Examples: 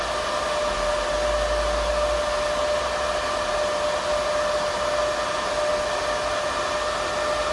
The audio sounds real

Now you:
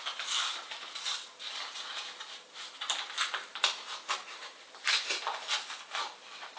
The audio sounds real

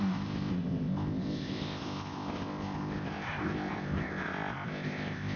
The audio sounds fake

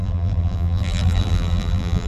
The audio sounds fake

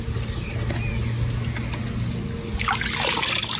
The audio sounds real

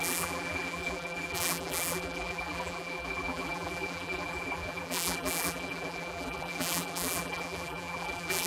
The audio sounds fake